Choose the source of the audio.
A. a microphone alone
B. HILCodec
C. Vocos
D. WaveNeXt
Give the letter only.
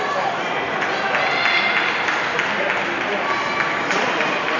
A